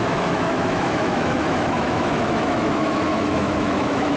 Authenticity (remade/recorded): remade